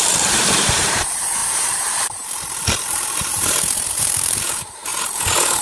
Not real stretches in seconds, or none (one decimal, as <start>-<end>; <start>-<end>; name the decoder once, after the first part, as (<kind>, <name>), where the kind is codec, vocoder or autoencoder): 0.0-4.9 (vocoder, BigVGAN v2)